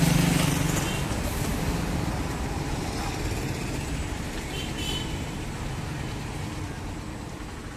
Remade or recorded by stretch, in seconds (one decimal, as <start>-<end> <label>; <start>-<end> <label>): 0.0-7.8 recorded